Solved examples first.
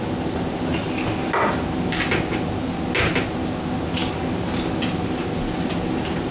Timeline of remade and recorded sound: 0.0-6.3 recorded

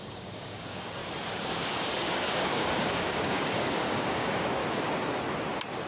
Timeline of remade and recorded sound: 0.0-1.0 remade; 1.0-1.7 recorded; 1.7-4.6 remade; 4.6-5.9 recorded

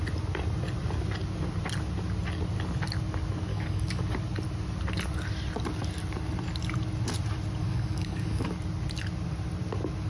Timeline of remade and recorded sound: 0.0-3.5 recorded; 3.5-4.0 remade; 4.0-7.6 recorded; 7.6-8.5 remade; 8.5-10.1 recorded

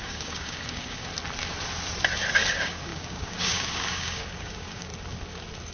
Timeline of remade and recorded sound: 0.0-1.1 remade; 1.1-2.5 recorded; 2.5-4.9 remade; 4.9-5.7 recorded